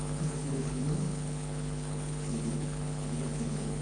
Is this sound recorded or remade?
remade